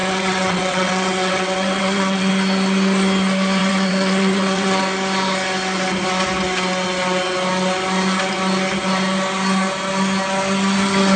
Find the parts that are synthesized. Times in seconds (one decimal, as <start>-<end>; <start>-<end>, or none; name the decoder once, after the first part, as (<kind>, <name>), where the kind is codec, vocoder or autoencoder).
0.0-2.3 (vocoder, WaveNeXt); 3.6-4.8